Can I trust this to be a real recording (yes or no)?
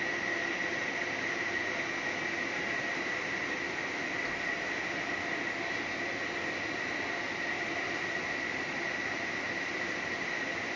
yes